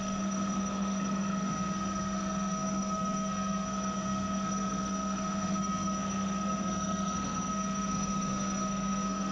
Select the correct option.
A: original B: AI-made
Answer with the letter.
B